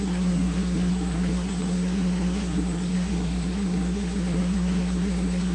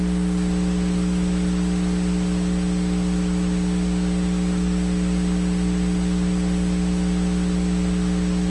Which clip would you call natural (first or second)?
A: second